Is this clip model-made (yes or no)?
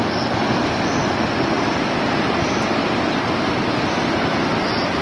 no